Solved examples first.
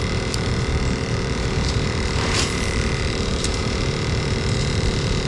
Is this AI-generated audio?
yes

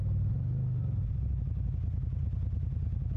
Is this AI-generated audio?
no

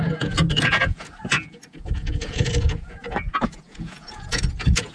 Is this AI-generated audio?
yes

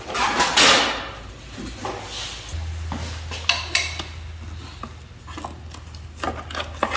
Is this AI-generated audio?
no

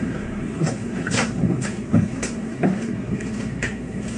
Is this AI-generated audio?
yes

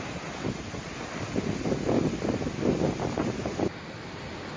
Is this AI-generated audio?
no